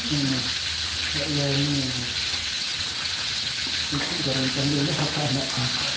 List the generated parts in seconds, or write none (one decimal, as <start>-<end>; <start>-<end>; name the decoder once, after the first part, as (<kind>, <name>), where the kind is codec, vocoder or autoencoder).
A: 2.2-3.5 (vocoder, WaveNeXt)